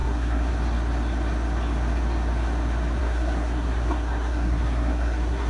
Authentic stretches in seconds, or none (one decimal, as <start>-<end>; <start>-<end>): 0.5-3.0